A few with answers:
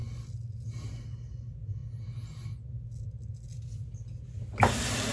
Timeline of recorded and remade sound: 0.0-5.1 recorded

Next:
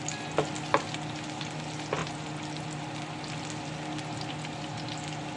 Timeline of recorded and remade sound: 0.0-5.4 recorded

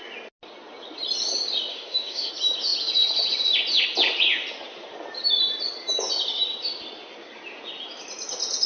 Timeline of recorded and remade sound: 0.0-1.7 recorded; 1.7-2.3 remade; 2.3-8.7 recorded

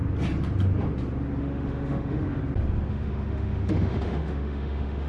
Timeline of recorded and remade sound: 0.0-1.4 recorded; 1.4-2.4 remade; 2.4-2.9 recorded; 2.9-5.1 remade

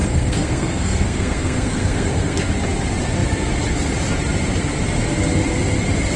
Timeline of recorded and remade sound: 0.0-2.4 remade; 2.4-6.2 recorded

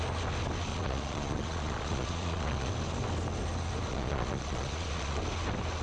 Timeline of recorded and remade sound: 0.0-0.7 recorded; 0.7-2.7 remade; 2.7-3.9 recorded; 3.9-5.2 remade; 5.2-5.8 recorded